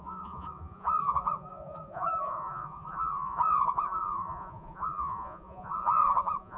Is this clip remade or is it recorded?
remade